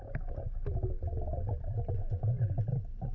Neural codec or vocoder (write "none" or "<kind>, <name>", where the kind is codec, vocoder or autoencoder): none